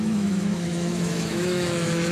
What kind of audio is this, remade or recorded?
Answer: remade